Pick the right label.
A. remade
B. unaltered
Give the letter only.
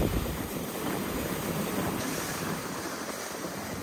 A